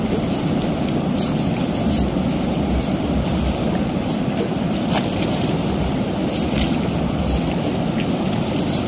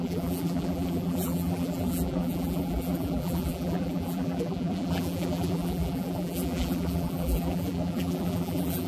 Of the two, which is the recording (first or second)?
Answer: first